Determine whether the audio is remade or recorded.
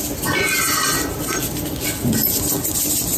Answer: recorded